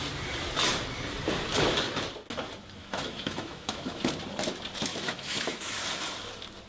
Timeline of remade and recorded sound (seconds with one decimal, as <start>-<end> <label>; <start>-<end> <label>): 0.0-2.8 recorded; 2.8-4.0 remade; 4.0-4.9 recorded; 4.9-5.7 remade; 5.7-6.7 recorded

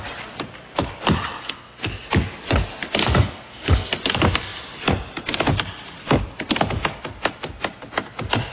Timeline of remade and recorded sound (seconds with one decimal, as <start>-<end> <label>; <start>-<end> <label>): 0.0-1.4 recorded; 1.4-1.9 remade; 1.9-3.0 recorded; 3.0-3.9 remade; 3.9-8.5 recorded

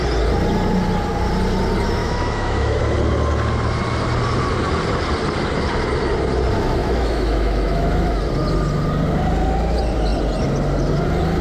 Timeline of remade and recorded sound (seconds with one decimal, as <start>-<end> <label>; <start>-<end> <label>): 0.0-2.0 recorded; 2.0-2.8 remade; 2.8-6.8 recorded; 6.8-8.2 remade; 8.2-11.4 recorded

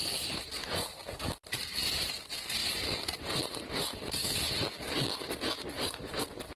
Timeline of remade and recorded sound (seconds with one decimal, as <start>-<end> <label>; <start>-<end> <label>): 0.0-0.6 recorded; 0.6-1.2 remade; 1.2-6.6 recorded

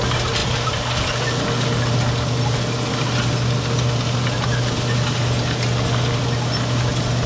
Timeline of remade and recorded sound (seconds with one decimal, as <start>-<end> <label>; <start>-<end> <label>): 0.0-0.4 recorded; 0.4-1.0 remade; 1.0-7.3 recorded